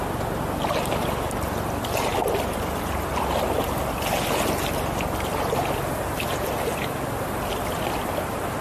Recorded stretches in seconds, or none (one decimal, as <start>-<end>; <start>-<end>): 0.0-8.6